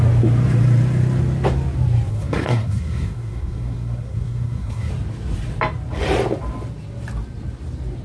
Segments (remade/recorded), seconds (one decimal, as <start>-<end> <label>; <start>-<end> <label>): 0.0-2.1 recorded; 2.1-4.9 remade; 4.9-8.0 recorded